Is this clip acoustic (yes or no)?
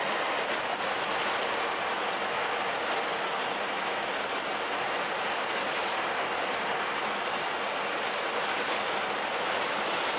yes